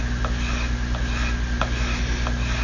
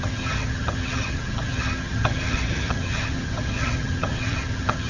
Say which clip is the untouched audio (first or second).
first